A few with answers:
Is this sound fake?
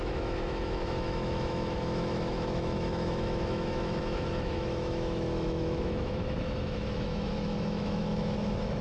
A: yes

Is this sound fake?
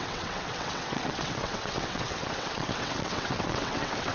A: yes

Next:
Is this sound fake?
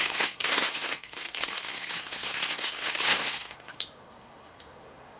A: yes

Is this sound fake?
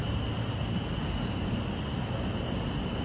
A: no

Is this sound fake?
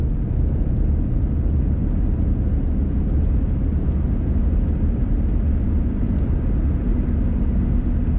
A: no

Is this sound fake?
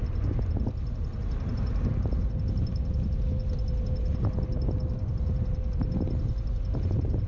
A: no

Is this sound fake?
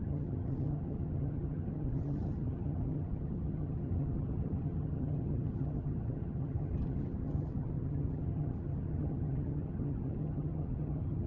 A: yes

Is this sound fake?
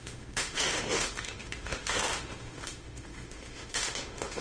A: yes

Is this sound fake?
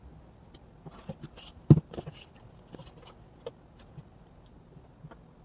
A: no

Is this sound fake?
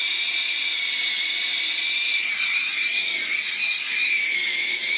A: no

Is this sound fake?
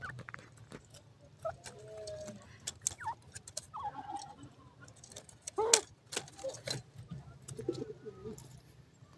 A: no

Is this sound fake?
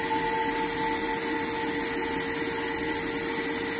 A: no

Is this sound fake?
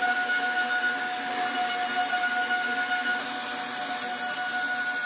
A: no